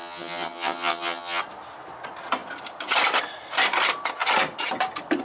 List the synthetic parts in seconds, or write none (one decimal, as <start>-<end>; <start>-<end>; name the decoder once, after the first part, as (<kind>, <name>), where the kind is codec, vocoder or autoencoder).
0.0-1.4 (vocoder, HiFi-GAN)